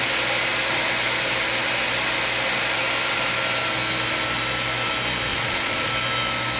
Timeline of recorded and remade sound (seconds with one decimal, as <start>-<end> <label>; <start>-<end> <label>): 0.0-5.3 recorded; 5.3-5.9 remade; 5.9-6.6 recorded